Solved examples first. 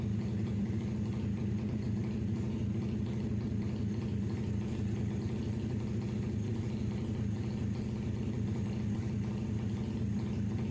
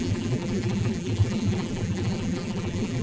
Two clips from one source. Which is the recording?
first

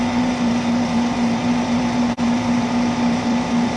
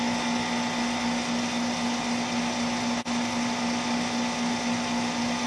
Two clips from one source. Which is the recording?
second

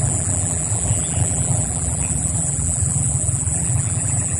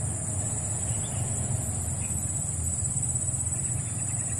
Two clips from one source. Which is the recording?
second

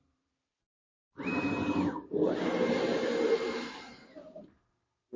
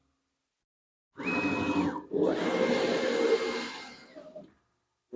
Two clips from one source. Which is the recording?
second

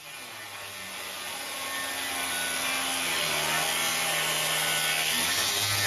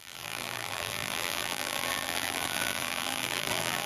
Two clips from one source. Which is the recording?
first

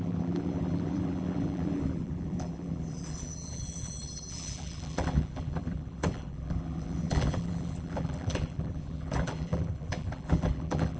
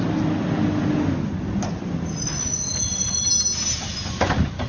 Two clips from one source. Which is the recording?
second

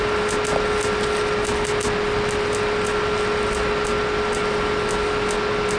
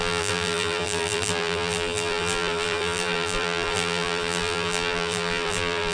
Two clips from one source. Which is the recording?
first